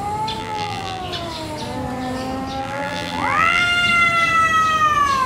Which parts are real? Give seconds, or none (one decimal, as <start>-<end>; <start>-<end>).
0.0-0.4; 1.0-2.6; 3.6-5.3